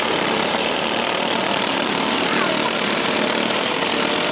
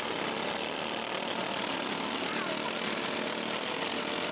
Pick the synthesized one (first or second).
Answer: first